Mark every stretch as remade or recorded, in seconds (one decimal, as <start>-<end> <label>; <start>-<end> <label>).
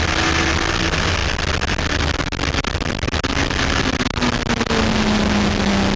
0.0-6.0 recorded